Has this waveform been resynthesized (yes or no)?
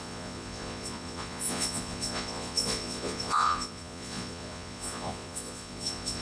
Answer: yes